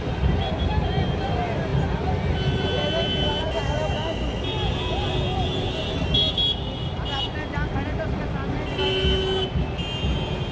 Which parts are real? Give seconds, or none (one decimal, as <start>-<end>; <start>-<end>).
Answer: 0.0-10.5